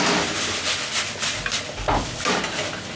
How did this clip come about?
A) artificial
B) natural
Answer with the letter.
B